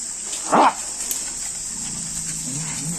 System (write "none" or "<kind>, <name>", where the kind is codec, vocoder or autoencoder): none